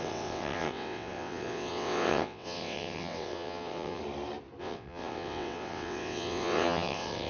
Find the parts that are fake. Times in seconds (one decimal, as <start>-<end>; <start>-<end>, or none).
0.0-4.0; 4.6-7.3

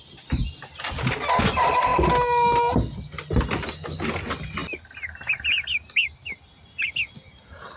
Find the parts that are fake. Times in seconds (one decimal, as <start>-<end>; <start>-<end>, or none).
none

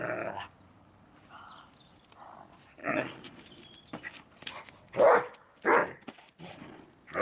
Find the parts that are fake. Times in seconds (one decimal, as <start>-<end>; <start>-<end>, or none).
2.8-3.4

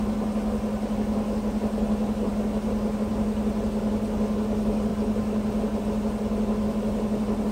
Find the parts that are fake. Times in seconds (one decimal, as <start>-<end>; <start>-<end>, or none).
none

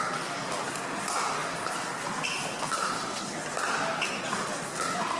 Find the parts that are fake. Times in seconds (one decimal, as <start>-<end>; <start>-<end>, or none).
none

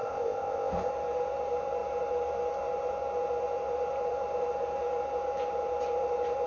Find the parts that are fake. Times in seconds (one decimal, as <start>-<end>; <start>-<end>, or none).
0.0-0.9

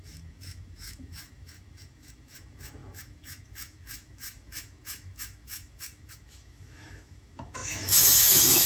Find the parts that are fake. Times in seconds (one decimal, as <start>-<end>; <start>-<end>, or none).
0.0-8.7

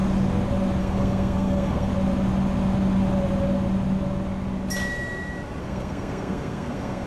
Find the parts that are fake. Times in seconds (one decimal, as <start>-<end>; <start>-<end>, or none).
0.8-1.9; 5.6-7.1